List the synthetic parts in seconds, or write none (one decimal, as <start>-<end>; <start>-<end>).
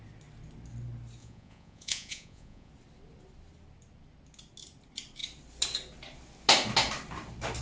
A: 1.2-2.7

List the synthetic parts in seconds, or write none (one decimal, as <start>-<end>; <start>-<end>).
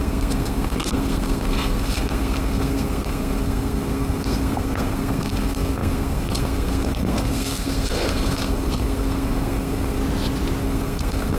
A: 0.0-10.0; 10.6-11.4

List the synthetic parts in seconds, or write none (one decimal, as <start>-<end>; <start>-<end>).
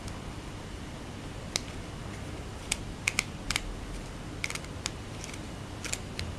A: 2.0-2.5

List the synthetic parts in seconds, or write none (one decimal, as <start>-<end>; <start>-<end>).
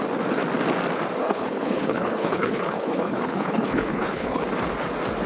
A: 1.2-4.4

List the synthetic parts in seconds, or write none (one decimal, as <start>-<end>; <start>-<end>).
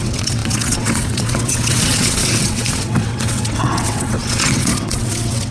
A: 0.0-5.5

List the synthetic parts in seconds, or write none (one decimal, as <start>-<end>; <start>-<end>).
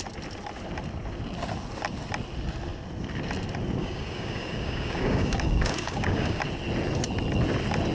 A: 3.8-6.4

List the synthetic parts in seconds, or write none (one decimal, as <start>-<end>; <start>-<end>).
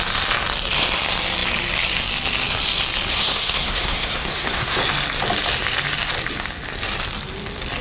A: 3.1-4.8